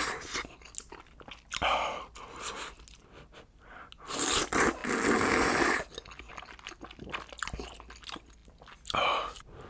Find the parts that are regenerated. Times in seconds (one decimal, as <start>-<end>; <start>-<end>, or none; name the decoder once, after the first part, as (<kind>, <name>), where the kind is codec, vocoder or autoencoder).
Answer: none